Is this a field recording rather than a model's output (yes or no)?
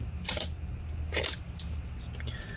yes